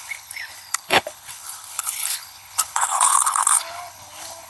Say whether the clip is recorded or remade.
remade